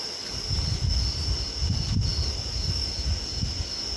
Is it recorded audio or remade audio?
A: recorded